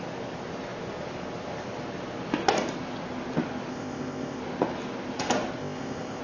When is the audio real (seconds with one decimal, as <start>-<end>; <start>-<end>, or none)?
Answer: 0.0-3.7; 4.4-5.6